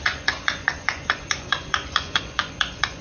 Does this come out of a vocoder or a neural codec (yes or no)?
yes